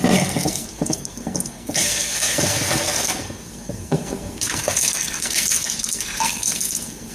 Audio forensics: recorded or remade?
remade